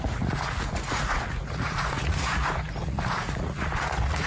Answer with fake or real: fake